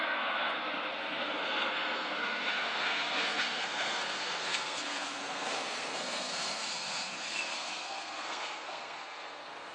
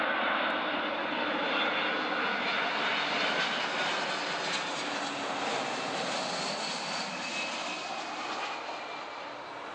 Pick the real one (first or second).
second